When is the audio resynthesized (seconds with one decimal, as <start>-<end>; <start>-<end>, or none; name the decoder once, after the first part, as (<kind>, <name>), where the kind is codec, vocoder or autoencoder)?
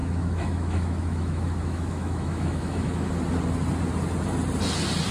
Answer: 0.0-3.1 (autoencoder, DAC-VAE)